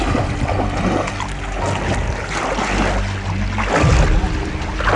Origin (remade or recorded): recorded